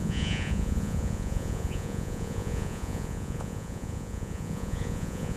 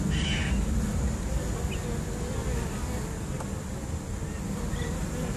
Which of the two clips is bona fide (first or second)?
second